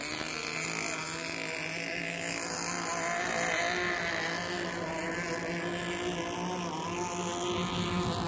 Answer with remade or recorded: recorded